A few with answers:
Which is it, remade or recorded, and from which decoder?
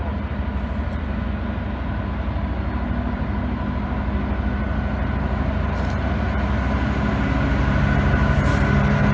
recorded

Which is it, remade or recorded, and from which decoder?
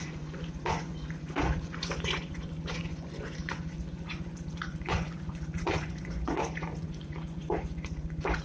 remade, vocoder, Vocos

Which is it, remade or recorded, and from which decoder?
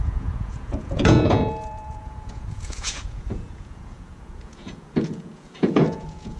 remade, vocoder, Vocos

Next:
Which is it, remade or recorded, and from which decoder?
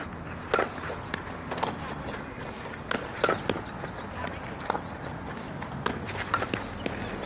recorded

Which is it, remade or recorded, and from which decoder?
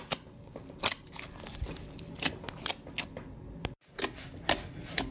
recorded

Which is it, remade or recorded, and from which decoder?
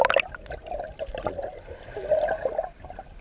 recorded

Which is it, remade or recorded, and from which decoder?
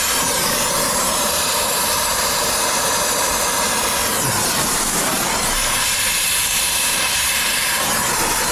remade, vocoder, BigVGAN v2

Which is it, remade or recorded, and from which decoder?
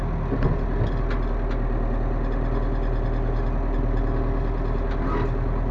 recorded